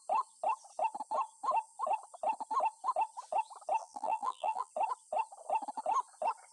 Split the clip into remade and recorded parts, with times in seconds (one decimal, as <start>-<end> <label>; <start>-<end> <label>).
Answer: 0.0-3.8 recorded; 3.8-4.7 remade; 4.7-6.5 recorded